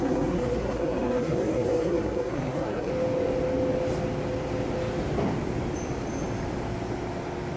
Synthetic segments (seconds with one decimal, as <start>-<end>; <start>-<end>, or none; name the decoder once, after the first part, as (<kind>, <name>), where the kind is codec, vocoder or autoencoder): 0.0-2.9 (codec, SNAC)